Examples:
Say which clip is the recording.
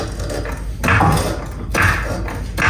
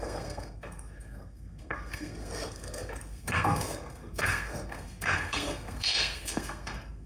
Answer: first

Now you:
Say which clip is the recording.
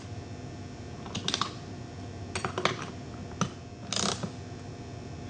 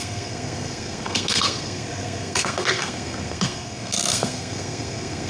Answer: first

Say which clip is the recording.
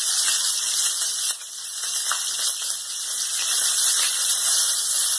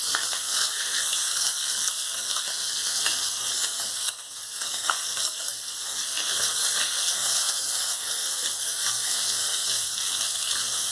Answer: first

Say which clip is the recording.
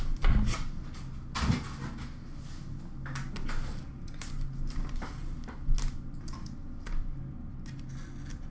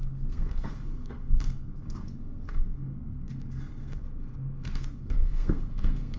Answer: first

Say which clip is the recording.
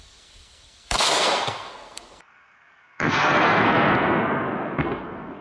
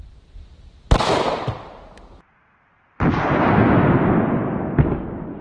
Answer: second